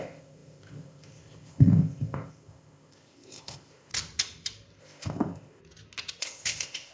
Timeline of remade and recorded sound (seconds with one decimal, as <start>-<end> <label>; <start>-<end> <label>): 0.0-3.9 remade; 3.9-4.8 recorded; 4.8-5.6 remade; 5.6-6.2 recorded; 6.2-6.9 remade